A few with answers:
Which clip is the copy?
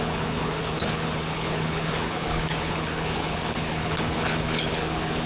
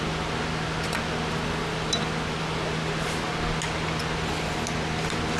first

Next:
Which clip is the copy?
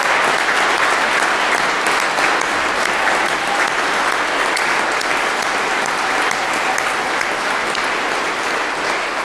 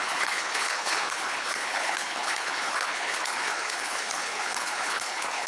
second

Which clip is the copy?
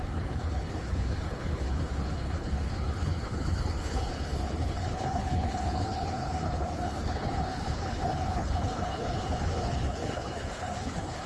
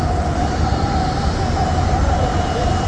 first